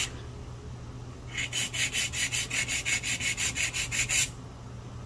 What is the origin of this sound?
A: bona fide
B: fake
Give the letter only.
A